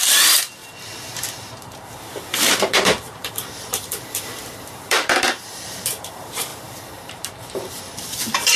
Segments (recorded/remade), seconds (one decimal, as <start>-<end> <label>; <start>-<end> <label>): 0.0-8.6 remade